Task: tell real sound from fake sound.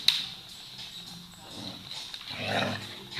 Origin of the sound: real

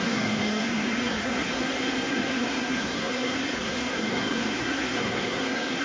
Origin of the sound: fake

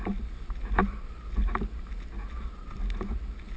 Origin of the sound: real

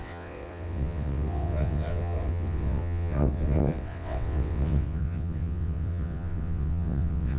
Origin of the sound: fake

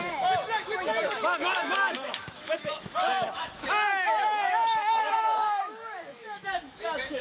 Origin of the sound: fake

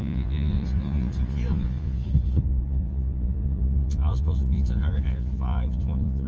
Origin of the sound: fake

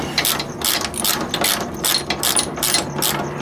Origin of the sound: real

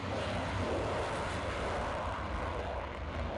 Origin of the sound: real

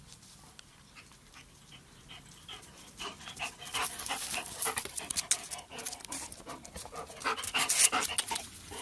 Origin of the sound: real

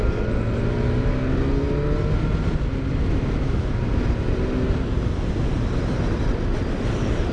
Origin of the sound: real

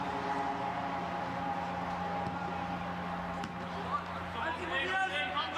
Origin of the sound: real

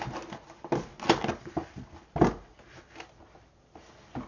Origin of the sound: real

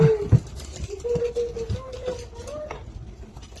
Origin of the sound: real